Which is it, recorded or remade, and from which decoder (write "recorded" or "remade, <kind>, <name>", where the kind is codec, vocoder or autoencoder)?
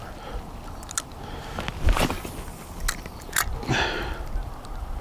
recorded